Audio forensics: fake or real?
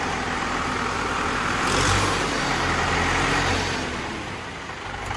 fake